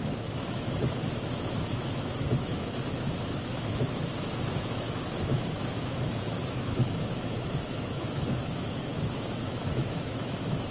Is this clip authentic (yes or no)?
no